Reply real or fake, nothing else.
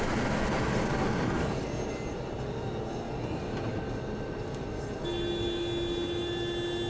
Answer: real